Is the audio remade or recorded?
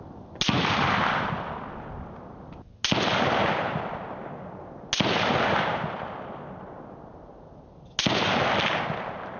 recorded